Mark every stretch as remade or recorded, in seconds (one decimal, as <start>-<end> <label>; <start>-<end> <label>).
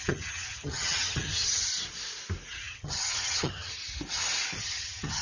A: 0.0-1.7 remade; 1.7-2.5 recorded; 2.5-3.8 remade; 3.8-4.6 recorded; 4.6-5.2 remade